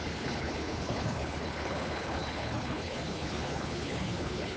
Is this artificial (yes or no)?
yes